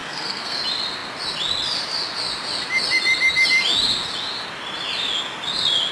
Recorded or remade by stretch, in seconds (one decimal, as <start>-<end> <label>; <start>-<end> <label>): 0.0-0.6 remade; 0.6-5.9 recorded